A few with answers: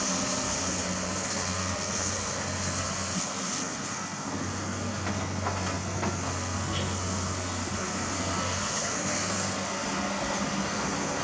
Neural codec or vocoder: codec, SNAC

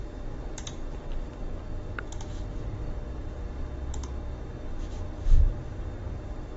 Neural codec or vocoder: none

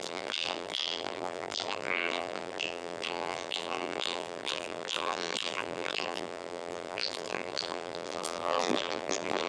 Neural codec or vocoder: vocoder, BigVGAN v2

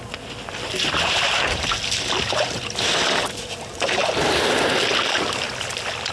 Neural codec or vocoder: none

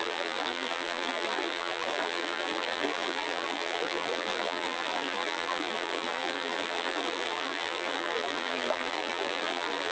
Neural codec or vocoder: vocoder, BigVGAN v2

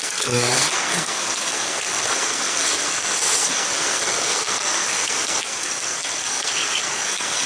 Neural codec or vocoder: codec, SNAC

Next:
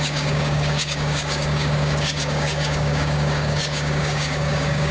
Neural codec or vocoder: codec, DAC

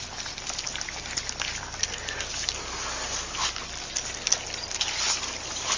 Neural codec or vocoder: none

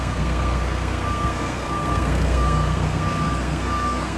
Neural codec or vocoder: codec, SNAC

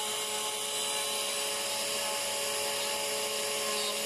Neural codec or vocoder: none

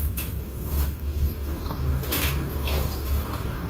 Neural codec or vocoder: codec, DAC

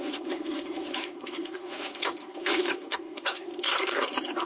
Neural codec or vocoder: codec, SNAC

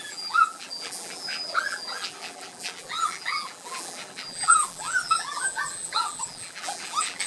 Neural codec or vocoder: vocoder, BigVGAN v2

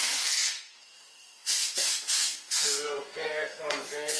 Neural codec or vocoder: codec, SNAC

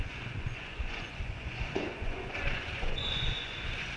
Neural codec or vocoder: vocoder, Vocos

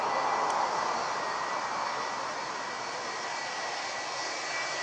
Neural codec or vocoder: none